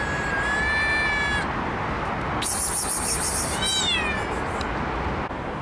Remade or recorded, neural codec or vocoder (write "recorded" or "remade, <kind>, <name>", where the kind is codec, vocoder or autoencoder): recorded